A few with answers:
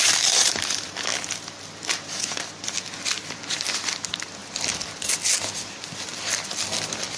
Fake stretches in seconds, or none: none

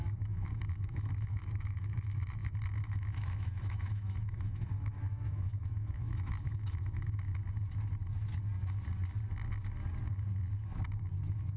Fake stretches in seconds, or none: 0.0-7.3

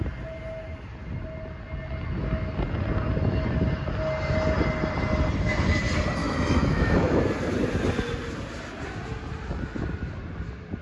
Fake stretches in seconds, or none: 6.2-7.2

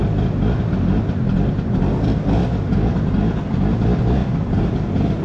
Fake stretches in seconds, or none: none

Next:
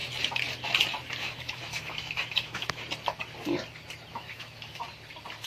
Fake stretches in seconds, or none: 1.2-2.8; 4.1-4.8

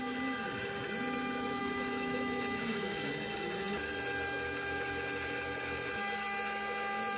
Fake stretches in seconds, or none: 1.6-3.1

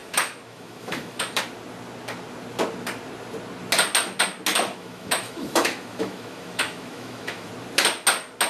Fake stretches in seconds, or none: 0.0-1.4; 4.5-7.5

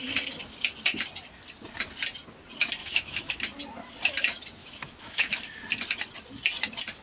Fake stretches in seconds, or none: 2.8-3.3; 4.6-5.4